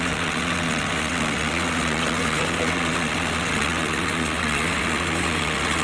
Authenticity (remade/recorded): remade